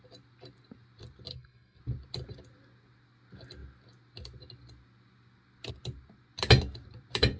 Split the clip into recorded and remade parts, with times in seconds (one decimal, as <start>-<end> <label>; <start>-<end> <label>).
0.0-1.3 recorded; 1.3-1.8 remade; 1.8-7.4 recorded